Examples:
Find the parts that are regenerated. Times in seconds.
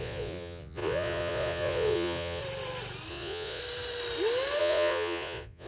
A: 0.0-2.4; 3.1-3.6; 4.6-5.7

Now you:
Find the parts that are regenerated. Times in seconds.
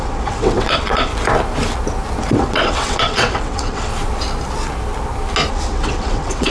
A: 0.0-1.1; 2.2-3.9; 5.5-6.5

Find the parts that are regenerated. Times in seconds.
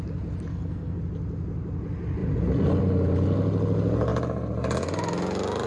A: 0.5-1.0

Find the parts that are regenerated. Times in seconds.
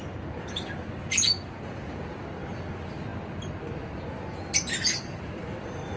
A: 1.0-2.2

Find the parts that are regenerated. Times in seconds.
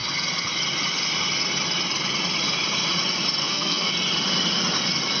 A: 3.4-3.9